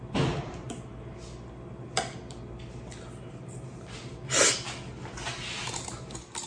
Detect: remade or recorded recorded